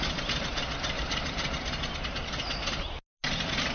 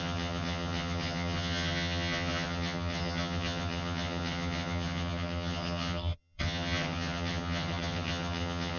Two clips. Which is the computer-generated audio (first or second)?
second